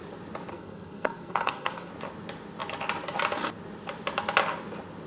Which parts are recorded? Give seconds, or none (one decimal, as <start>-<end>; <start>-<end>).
0.0-0.5; 1.9-5.1